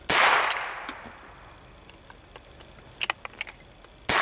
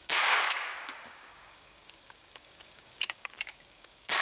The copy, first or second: second